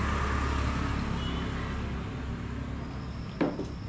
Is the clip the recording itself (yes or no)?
yes